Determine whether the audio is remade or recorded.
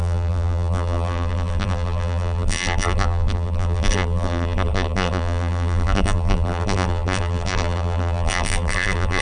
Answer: remade